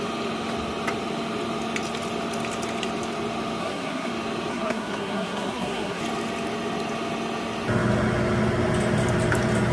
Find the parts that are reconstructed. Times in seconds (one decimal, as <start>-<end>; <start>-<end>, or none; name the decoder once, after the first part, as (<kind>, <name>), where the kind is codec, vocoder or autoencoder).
3.6-4.1 (codec, SNAC); 4.5-6.0